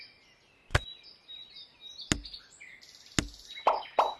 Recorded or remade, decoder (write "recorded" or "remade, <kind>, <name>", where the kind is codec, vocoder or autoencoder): recorded